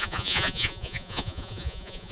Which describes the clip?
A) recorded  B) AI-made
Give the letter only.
B